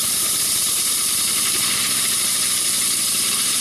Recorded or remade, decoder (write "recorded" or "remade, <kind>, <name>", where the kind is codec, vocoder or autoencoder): remade, vocoder, BigVGAN v2